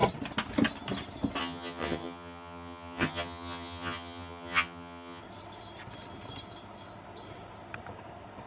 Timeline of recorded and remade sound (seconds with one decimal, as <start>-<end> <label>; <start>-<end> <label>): 0.0-1.4 recorded; 1.4-5.2 remade; 5.2-8.5 recorded